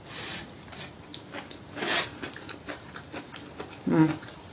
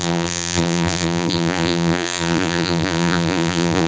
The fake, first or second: second